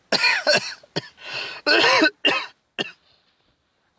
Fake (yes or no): no